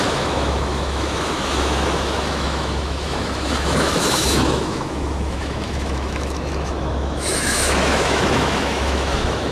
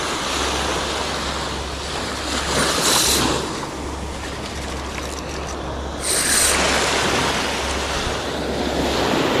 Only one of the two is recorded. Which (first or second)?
second